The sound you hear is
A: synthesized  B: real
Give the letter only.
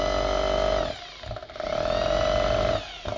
B